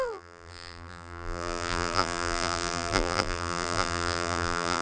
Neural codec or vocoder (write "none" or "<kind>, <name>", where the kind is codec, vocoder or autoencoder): vocoder, BigVGAN v2